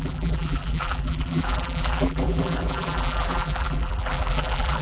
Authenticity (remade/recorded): remade